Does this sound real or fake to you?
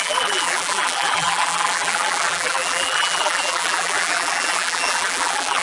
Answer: fake